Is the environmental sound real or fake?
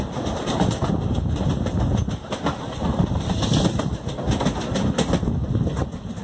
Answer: real